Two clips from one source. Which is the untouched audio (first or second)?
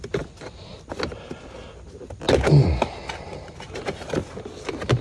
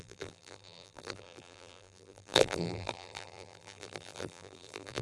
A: first